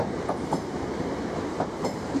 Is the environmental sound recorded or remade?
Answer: remade